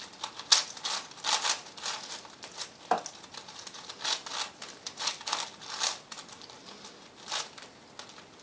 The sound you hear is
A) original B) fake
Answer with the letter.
A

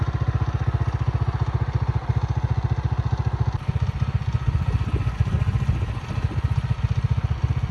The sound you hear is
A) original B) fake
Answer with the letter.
A